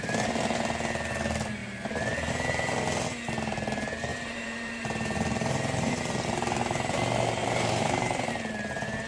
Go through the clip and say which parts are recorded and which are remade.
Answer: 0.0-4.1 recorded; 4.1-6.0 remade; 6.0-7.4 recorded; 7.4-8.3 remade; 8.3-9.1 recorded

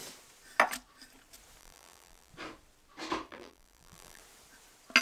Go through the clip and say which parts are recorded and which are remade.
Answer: 0.0-1.6 recorded; 1.6-2.3 remade; 2.3-3.3 recorded; 3.3-4.2 remade; 4.2-5.0 recorded

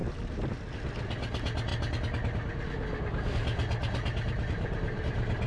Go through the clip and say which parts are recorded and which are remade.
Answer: 0.0-3.8 recorded; 3.8-5.5 remade

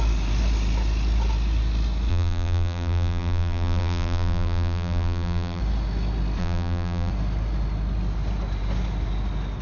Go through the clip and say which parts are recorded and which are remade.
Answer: 0.0-2.1 recorded; 2.1-5.6 remade; 5.6-6.4 recorded; 6.4-7.1 remade; 7.1-9.6 recorded

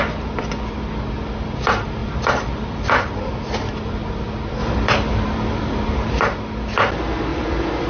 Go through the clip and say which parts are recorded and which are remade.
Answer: 0.0-2.0 recorded; 2.0-3.3 remade; 3.3-4.6 recorded; 4.6-6.2 remade; 6.2-7.3 recorded; 7.3-7.9 remade

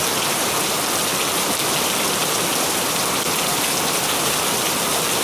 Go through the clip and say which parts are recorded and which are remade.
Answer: 0.0-5.2 remade

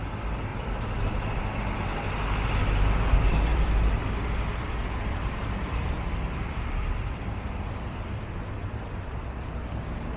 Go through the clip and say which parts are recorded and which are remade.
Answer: 0.0-0.5 recorded; 0.5-1.4 remade; 1.4-3.5 recorded; 3.5-8.3 remade; 8.3-10.2 recorded

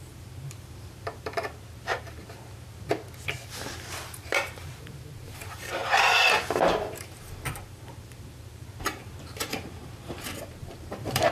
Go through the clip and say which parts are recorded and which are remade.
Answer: 0.0-2.9 remade; 2.9-4.0 recorded; 4.0-11.3 remade